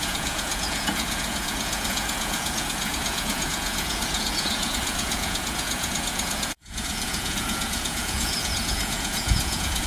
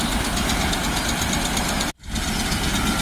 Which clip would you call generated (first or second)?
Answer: first